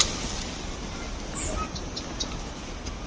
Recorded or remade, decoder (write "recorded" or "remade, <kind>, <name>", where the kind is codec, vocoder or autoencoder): recorded